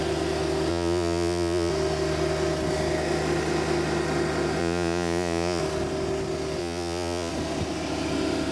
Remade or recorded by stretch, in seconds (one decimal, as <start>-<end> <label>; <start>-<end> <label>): 0.0-0.7 recorded; 0.7-1.7 remade; 1.7-4.6 recorded; 4.6-5.6 remade; 5.6-6.6 recorded; 6.6-7.3 remade; 7.3-8.5 recorded